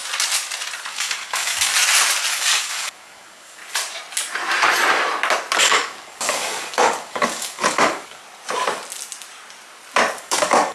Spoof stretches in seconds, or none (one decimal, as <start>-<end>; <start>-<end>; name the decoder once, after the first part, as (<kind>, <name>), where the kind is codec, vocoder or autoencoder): 0.9-1.7 (codec, DAC); 2.3-3.6; 5.6-8.2; 10.2-10.7